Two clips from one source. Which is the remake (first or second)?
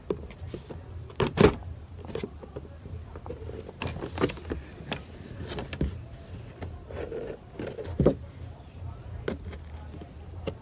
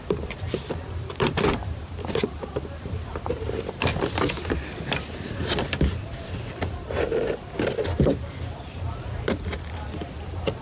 second